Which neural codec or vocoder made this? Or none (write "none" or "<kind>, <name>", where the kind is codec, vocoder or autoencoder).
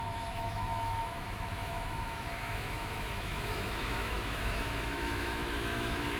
autoencoder, DAC-VAE